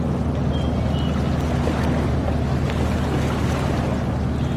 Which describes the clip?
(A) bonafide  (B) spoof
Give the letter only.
A